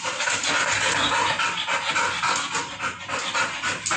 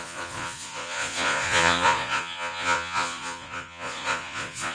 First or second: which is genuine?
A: first